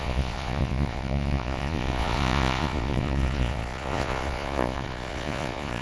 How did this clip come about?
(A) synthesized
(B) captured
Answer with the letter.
A